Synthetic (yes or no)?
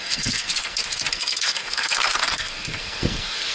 yes